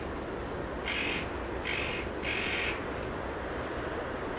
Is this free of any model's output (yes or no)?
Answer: yes